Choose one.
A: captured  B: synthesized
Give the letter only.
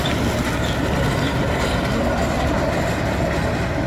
A